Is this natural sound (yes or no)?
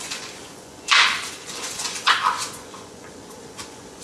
no